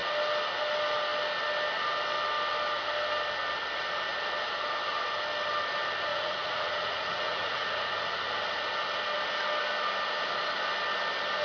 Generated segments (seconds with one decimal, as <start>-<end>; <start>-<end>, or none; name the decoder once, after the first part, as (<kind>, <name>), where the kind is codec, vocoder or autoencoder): 6.1-7.9 (vocoder, Vocos)